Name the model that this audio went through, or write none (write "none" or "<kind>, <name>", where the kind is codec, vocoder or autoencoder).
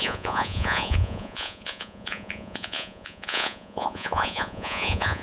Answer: vocoder, Vocos